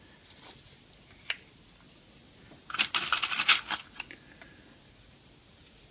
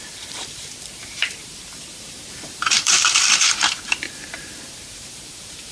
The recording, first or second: first